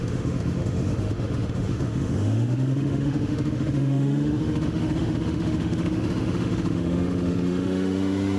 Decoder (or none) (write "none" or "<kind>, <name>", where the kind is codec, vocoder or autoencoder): autoencoder, DAC-VAE